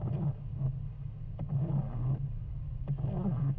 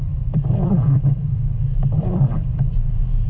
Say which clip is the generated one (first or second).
second